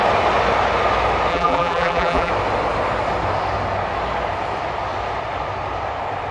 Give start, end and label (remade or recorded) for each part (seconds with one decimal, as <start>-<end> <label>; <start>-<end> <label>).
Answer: 0.0-1.3 recorded; 1.3-2.3 remade; 2.3-6.3 recorded